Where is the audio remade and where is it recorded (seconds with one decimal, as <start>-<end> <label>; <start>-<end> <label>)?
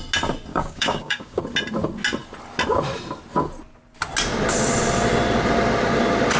0.0-0.5 recorded; 0.5-1.4 remade; 1.4-6.4 recorded